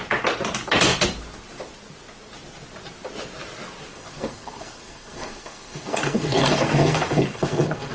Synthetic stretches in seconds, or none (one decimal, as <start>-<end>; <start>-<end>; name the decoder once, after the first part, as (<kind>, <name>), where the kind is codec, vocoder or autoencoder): 3.9-7.9 (codec, SNAC)